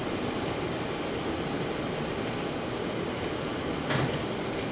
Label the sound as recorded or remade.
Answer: recorded